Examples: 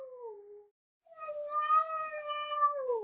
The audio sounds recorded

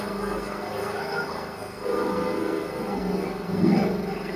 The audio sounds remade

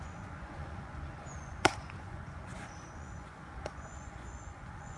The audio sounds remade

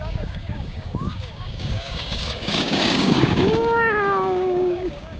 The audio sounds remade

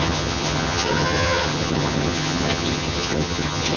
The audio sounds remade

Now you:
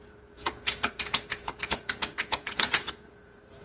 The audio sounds remade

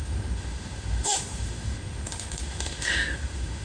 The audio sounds remade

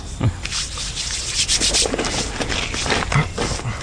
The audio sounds recorded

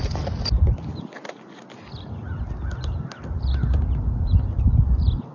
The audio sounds recorded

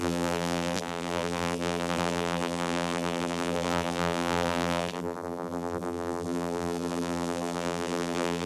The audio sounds remade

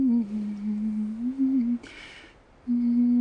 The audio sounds recorded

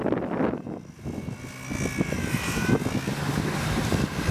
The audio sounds recorded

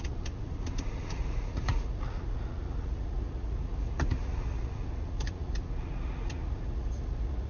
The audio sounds remade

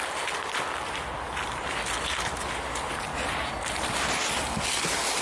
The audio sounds recorded